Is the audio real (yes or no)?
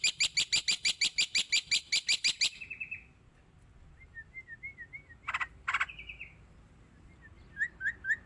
yes